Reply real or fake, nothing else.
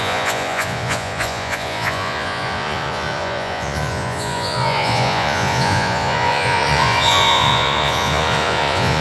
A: fake